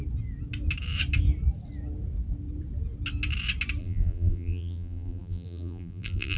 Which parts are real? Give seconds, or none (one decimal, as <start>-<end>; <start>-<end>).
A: 0.0-3.8

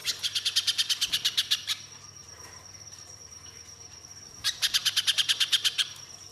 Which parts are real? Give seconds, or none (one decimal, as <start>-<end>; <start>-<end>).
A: 0.0-2.7

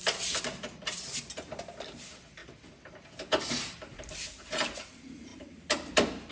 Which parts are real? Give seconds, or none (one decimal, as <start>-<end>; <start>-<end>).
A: 2.4-3.4

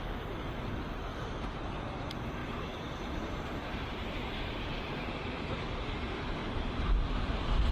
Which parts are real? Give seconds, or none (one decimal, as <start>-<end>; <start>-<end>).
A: 0.0-1.1; 1.7-2.4; 5.5-7.7